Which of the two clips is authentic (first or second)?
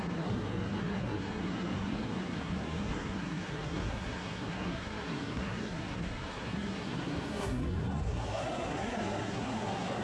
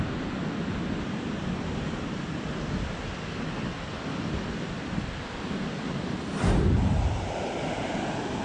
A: second